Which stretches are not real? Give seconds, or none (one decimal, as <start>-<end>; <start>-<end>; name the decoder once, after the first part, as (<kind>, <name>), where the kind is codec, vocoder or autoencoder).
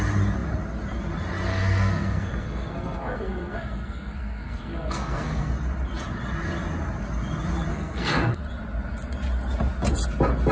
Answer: 1.5-5.5 (codec, SNAC); 7.7-8.4